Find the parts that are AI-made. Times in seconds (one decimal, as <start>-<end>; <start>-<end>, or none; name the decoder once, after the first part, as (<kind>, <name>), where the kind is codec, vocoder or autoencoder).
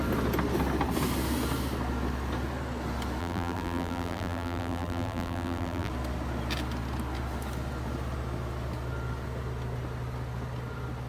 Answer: 3.2-5.9 (vocoder, BigVGAN v2)